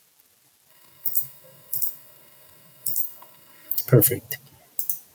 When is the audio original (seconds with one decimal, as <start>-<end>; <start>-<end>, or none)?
0.0-0.7; 3.8-5.1